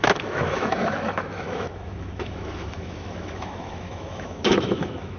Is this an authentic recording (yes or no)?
no